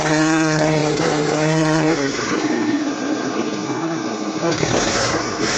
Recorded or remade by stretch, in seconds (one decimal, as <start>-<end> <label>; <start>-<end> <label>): 0.0-5.6 remade